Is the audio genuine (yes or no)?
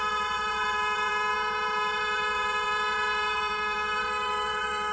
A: no